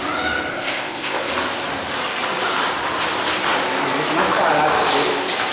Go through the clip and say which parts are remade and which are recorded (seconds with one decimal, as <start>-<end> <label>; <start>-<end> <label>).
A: 0.0-0.5 recorded; 0.5-1.3 remade; 1.3-5.5 recorded